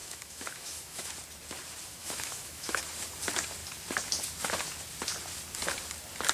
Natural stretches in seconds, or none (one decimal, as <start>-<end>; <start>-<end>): 1.1-2.0; 2.8-6.3

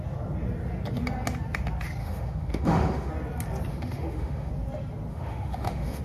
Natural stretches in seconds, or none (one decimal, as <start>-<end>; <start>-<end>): 0.0-2.0; 3.1-3.7; 4.5-5.1